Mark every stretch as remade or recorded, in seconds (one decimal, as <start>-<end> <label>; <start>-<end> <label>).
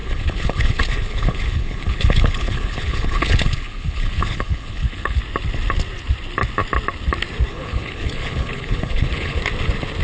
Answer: 0.0-5.2 remade; 5.2-7.5 recorded; 7.5-9.4 remade; 9.4-10.0 recorded